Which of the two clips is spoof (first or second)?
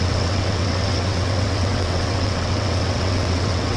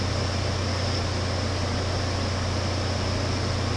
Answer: first